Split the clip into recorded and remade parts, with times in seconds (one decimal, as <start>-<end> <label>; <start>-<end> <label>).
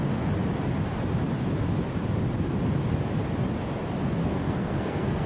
0.0-4.2 recorded; 4.2-5.3 remade